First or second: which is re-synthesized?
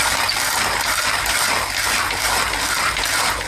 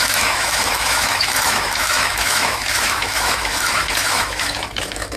second